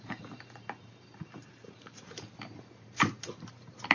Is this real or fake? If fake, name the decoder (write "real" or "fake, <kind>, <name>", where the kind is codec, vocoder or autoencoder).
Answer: fake, vocoder, BigVGAN v2